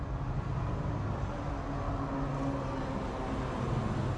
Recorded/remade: recorded